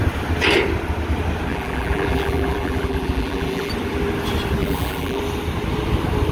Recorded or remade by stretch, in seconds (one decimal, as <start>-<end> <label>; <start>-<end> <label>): 0.0-1.5 recorded; 1.5-3.7 remade; 3.7-4.6 recorded; 4.6-5.2 remade; 5.2-6.3 recorded